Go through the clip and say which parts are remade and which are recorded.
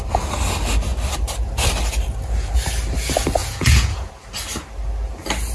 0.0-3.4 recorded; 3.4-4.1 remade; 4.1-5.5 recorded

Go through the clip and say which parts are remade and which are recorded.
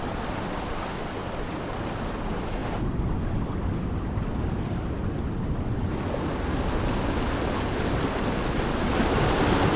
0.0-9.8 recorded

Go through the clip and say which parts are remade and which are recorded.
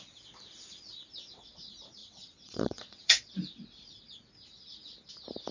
0.0-2.0 recorded; 2.0-3.3 remade; 3.3-5.5 recorded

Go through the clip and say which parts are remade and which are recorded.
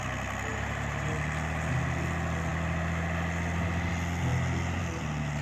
0.0-0.5 recorded; 0.5-1.1 remade; 1.1-5.4 recorded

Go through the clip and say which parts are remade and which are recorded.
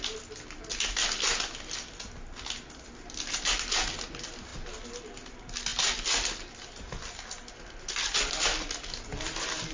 0.0-9.7 recorded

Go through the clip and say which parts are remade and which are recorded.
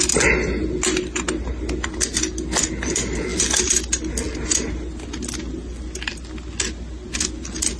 0.0-7.8 recorded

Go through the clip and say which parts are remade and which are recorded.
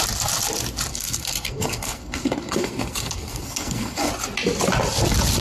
0.0-0.9 recorded; 0.9-4.1 remade; 4.1-5.4 recorded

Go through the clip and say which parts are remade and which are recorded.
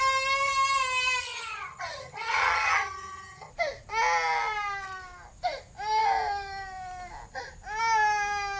0.0-1.2 recorded; 1.2-3.5 remade; 3.5-8.6 recorded